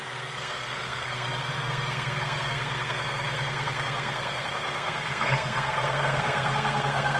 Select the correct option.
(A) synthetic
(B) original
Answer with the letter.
A